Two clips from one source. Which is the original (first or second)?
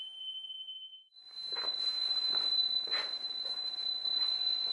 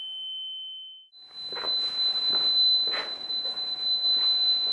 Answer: second